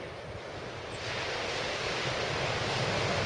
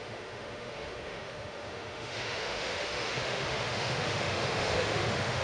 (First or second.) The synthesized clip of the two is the second